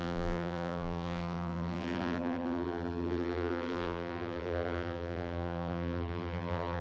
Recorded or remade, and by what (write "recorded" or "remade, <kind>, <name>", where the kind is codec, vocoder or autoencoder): remade, vocoder, BigVGAN v2